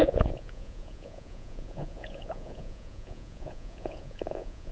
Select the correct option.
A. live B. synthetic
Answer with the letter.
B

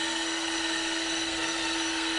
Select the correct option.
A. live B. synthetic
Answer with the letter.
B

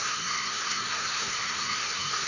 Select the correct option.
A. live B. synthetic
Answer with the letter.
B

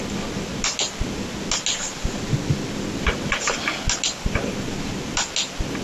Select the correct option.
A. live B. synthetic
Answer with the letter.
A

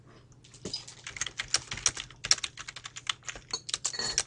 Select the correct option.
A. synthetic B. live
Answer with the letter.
B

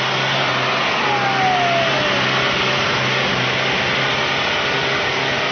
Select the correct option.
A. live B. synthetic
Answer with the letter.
A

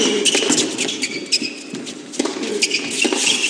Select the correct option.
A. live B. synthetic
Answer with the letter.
A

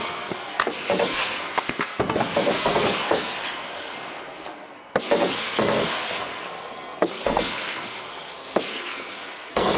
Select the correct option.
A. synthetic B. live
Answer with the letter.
A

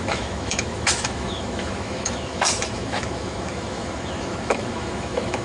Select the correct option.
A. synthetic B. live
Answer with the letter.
A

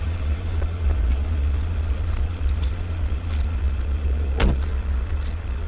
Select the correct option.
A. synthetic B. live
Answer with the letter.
A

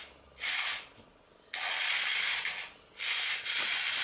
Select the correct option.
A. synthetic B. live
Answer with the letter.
B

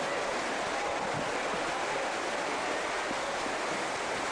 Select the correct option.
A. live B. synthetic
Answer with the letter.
A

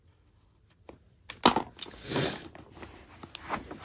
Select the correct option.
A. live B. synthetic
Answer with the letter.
A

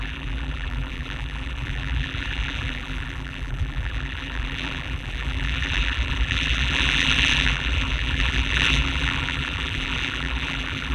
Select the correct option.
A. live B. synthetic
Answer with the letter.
B